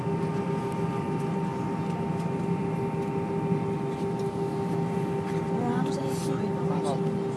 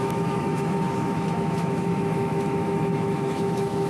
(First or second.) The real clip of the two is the first